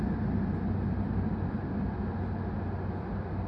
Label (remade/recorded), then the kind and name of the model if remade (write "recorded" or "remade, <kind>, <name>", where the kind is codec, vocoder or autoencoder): recorded